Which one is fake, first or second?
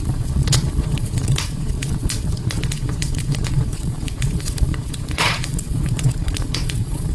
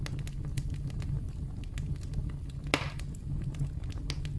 first